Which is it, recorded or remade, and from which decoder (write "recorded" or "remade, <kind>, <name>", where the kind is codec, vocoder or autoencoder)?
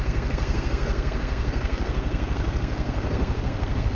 remade, codec, SNAC